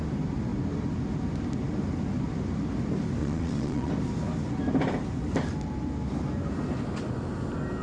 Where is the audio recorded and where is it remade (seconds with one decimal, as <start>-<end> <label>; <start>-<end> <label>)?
0.0-3.2 recorded; 3.2-3.9 remade; 3.9-7.8 recorded